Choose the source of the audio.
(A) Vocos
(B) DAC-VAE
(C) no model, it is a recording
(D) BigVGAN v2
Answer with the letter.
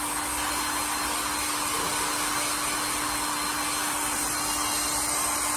C